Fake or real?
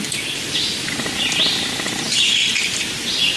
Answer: real